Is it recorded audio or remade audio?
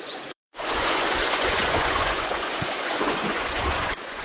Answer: remade